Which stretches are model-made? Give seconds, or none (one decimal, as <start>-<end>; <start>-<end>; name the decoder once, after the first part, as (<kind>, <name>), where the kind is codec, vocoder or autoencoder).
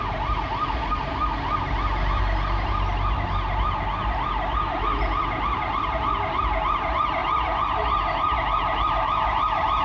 none